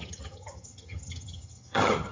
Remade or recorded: remade